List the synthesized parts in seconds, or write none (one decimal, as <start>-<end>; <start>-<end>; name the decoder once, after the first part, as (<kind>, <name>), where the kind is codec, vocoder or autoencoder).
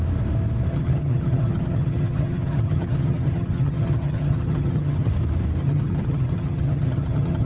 0.7-5.1 (vocoder, HiFi-GAN); 5.6-7.5